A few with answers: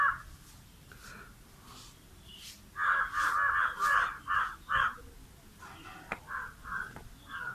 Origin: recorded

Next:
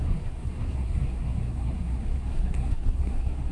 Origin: remade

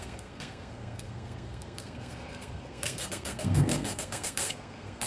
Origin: remade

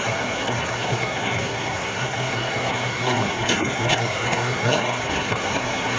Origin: remade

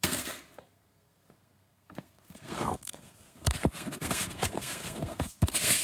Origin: remade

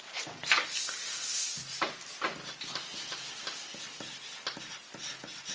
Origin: recorded